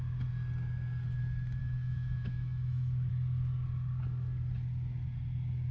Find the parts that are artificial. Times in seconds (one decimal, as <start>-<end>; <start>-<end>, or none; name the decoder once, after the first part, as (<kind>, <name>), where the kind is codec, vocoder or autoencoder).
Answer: 1.6-3.1 (autoencoder, DAC-VAE)